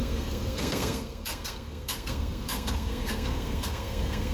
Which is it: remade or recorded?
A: remade